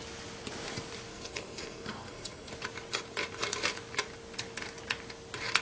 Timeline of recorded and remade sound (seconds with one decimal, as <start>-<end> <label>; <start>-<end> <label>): 0.0-1.1 recorded; 1.1-2.5 remade; 2.5-5.6 recorded